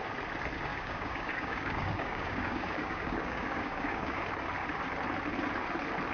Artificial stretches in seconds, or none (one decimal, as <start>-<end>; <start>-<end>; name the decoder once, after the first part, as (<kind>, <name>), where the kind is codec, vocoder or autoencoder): 0.7-4.2 (codec, DAC)